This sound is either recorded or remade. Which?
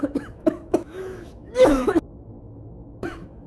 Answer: remade